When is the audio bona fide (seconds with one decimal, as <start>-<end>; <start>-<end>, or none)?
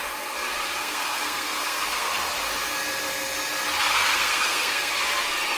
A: 0.0-0.8; 2.1-3.9; 4.9-5.6